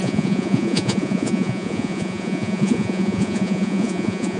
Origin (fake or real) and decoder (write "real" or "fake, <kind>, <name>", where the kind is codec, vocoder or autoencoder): fake, vocoder, Vocos